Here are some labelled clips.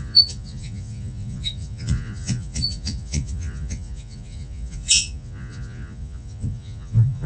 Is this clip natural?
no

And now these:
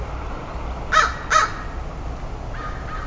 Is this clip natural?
yes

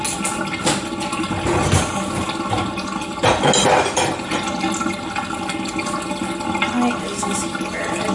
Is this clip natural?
yes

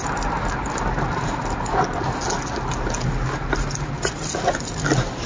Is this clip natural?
yes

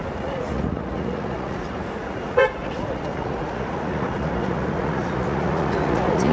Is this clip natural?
no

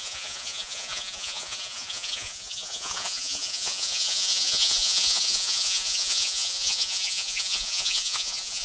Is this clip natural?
no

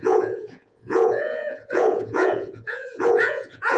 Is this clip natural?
no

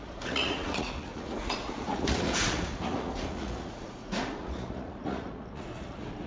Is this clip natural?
no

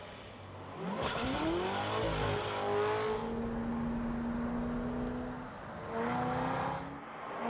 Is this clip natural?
yes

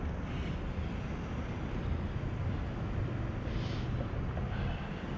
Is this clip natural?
yes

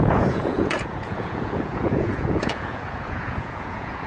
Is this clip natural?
no